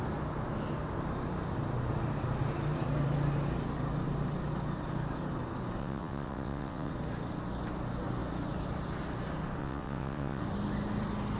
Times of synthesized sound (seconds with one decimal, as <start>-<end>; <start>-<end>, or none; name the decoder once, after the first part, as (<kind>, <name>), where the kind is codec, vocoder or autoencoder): 5.8-6.9 (vocoder, WaveNeXt); 9.6-10.4